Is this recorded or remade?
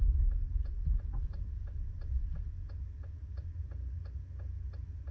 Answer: recorded